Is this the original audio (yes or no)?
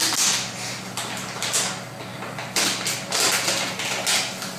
yes